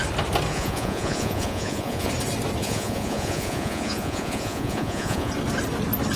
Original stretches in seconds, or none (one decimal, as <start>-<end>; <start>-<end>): 0.0-0.5; 2.1-2.6; 5.3-6.2